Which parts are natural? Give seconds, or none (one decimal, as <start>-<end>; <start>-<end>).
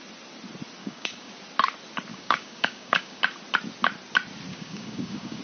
0.0-0.8; 1.3-2.1; 3.2-4.5